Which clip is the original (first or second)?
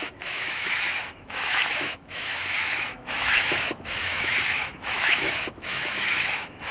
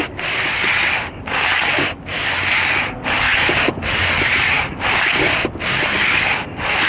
second